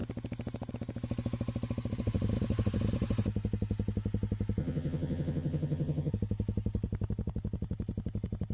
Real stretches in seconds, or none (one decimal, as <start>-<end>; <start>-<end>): 0.0-4.6; 6.1-8.5